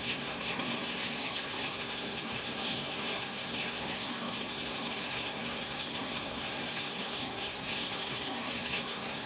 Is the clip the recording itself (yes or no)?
no